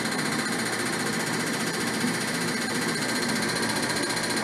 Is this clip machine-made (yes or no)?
no